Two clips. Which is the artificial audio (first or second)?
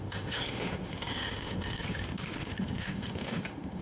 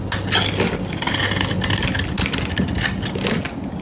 first